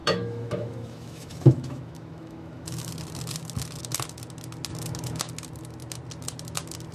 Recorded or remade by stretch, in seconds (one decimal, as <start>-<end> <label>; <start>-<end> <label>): 0.0-2.9 remade; 2.9-6.9 recorded